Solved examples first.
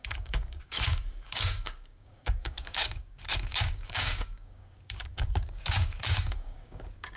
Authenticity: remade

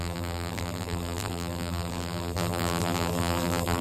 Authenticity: remade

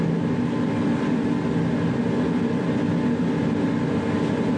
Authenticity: recorded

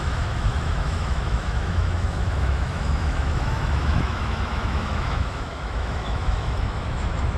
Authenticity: remade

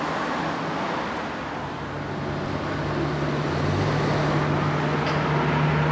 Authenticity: recorded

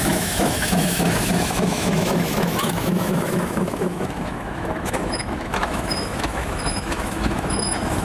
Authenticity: remade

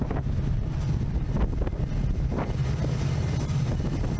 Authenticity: recorded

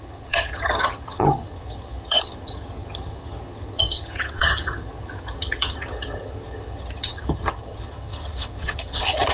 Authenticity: remade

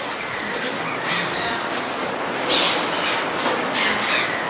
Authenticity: recorded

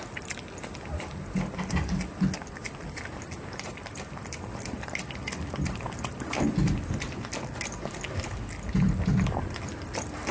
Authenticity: recorded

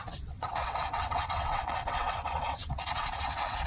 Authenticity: remade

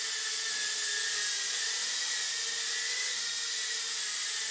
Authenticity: recorded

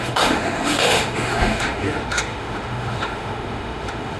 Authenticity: remade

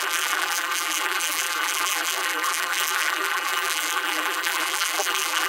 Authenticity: remade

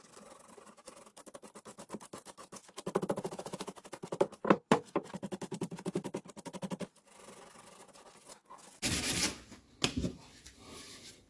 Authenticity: recorded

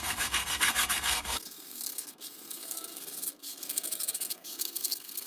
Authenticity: remade